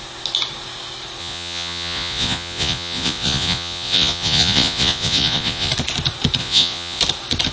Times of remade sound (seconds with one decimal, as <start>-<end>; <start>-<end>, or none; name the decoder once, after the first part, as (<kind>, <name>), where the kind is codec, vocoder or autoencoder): 1.2-5.7 (vocoder, Vocos); 6.4-7.0